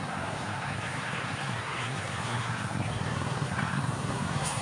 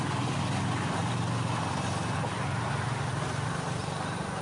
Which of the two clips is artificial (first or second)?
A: first